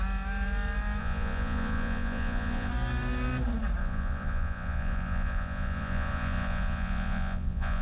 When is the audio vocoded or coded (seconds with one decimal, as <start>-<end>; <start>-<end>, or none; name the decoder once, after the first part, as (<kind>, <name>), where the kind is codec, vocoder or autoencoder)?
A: 1.0-2.7 (vocoder, Vocos); 3.8-7.8